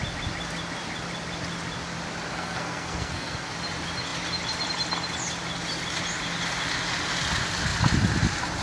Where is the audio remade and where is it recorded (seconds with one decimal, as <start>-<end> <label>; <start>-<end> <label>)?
0.0-2.3 recorded; 2.3-3.5 remade; 3.5-8.6 recorded